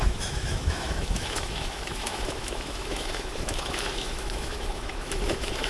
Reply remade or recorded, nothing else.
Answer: remade